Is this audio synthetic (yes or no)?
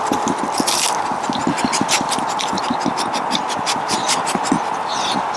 no